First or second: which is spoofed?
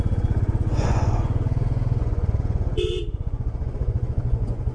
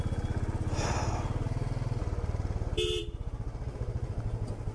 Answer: first